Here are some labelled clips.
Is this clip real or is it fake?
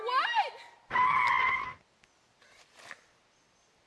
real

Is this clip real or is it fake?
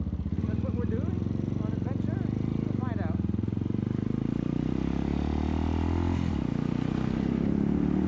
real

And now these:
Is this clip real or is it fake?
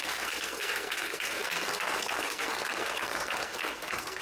fake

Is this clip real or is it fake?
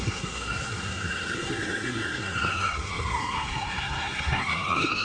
fake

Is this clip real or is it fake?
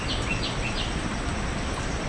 real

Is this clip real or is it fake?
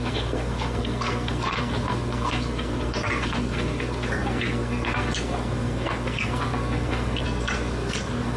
fake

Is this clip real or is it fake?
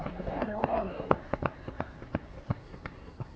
fake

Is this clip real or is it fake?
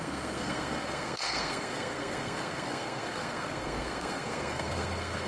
fake